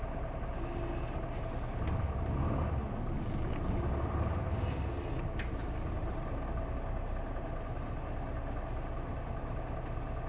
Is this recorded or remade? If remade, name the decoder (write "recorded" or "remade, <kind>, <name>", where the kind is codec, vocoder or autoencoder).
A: recorded